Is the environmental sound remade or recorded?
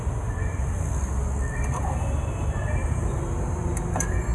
recorded